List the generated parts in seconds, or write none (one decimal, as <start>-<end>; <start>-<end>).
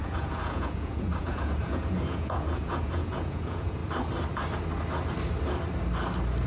0.0-3.8